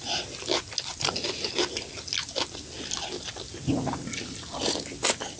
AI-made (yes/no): no